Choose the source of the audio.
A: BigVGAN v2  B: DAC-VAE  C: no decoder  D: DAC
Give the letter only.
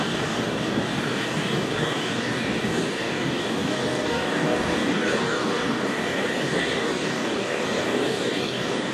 D